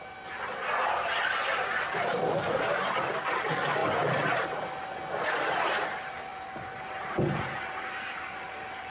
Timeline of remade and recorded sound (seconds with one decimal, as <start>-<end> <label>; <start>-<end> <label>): 0.0-8.9 recorded